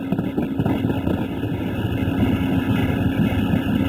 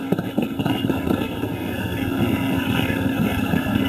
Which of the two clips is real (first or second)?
first